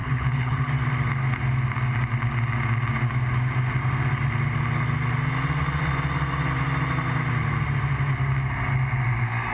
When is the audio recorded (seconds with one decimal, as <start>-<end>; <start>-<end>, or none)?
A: 0.7-9.5